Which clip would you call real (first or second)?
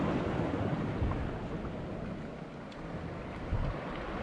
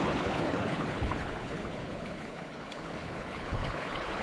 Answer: first